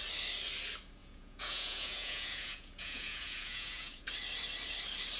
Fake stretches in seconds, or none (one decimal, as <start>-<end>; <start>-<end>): 1.0-4.1